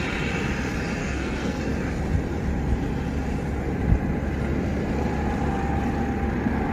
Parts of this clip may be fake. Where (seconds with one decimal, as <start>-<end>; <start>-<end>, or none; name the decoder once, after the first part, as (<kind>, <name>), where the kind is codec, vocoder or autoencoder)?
1.0-1.6 (codec, SNAC)